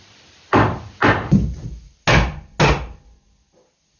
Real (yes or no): yes